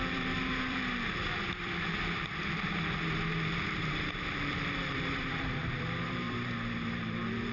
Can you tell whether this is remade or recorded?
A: remade